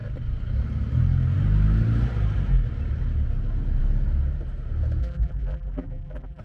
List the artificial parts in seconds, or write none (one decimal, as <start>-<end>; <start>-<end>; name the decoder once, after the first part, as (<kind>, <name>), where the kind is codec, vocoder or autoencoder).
5.0-6.4 (vocoder, BigVGAN v2)